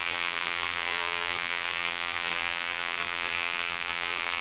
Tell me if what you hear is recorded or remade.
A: remade